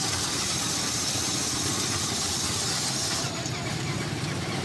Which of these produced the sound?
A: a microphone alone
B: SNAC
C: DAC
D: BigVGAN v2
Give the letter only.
D